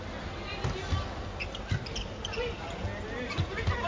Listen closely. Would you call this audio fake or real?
real